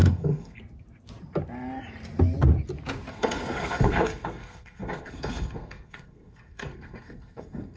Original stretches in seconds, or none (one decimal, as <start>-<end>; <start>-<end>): 0.6-3.1